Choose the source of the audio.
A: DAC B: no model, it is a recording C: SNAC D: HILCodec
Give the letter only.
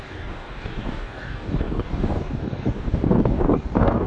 A